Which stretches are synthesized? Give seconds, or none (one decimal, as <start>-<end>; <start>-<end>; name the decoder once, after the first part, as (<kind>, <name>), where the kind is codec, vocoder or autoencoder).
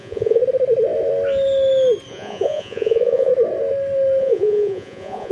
0.0-0.4 (vocoder, Vocos); 2.1-3.3; 4.2-5.3